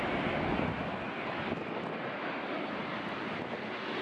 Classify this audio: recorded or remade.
recorded